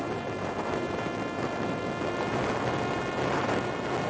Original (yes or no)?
yes